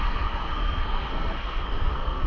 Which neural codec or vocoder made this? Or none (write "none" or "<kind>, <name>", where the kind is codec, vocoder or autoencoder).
codec, SNAC